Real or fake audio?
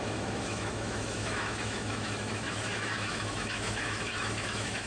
fake